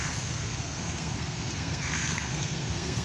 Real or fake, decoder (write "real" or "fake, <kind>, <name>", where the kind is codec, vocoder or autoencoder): fake, codec, SNAC